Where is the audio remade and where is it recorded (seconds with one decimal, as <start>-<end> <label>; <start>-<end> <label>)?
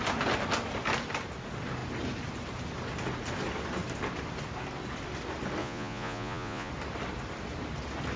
0.0-5.6 recorded; 5.6-6.7 remade; 6.7-8.2 recorded